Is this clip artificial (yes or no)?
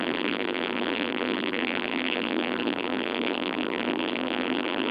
yes